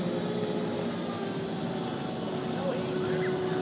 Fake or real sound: real